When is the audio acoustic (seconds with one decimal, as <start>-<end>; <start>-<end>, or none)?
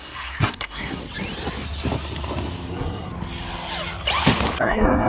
1.0-2.7; 3.1-4.6